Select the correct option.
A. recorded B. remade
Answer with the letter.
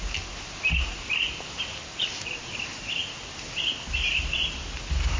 A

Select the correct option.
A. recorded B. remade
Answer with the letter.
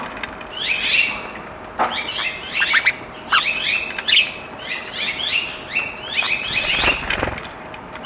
A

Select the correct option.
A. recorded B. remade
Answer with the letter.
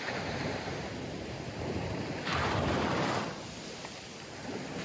A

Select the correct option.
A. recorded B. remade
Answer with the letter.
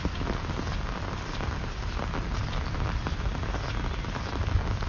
A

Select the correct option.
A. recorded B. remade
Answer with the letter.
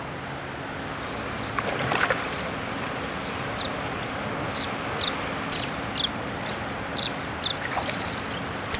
A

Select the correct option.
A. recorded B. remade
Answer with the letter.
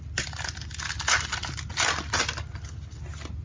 A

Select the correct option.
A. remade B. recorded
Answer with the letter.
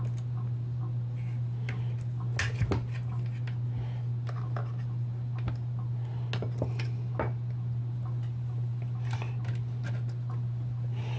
B